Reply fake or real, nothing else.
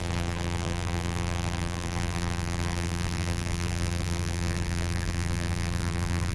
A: fake